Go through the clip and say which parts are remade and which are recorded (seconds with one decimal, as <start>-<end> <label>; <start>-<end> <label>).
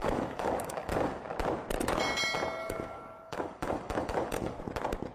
0.0-1.2 remade; 1.2-2.6 recorded; 2.6-4.6 remade; 4.6-5.1 recorded